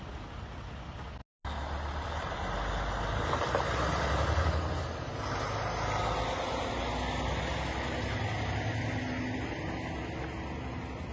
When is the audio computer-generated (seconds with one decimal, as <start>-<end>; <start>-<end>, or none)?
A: none